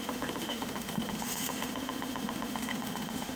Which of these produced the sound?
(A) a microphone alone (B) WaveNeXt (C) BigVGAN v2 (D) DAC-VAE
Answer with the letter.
D